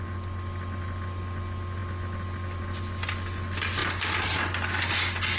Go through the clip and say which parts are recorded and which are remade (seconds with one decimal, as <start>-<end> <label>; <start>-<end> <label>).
0.0-5.4 recorded